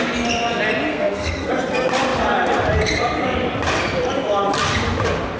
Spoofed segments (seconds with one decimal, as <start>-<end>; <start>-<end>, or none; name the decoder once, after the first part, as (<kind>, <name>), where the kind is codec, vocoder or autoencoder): 0.9-1.5 (codec, SNAC)